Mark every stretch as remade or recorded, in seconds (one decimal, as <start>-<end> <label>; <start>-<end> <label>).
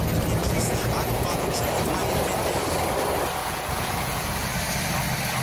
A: 0.0-0.4 recorded; 0.4-1.6 remade; 1.6-3.4 recorded; 3.4-4.5 remade; 4.5-5.4 recorded